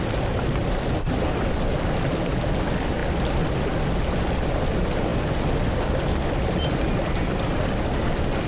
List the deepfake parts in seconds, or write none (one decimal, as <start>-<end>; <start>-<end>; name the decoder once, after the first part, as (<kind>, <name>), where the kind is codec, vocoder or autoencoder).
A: none

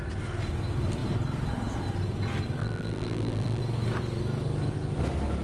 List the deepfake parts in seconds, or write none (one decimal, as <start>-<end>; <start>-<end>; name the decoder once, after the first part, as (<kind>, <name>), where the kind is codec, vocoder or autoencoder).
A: 2.6-3.6 (vocoder, BigVGAN v2)